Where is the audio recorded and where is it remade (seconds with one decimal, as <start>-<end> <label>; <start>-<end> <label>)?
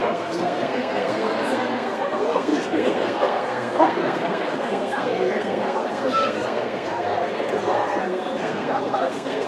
0.0-9.5 remade